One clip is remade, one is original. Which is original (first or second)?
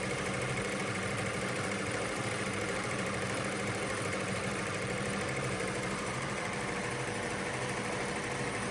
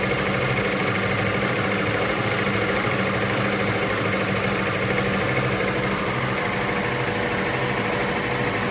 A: second